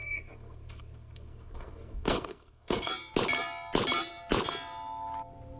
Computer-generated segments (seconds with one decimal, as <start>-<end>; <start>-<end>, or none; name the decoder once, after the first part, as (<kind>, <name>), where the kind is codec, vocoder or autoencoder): 0.0-2.9 (codec, SNAC)